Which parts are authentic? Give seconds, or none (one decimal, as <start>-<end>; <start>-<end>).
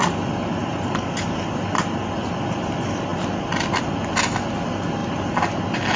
0.0-0.6; 2.3-5.0; 5.6-6.0